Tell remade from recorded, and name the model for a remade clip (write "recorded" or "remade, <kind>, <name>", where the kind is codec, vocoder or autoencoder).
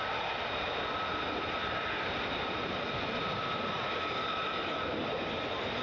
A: recorded